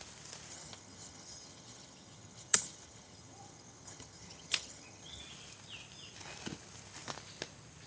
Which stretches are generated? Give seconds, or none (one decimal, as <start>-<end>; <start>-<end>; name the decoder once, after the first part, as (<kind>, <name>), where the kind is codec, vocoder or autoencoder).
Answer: 0.5-5.2 (vocoder, HiFi-GAN)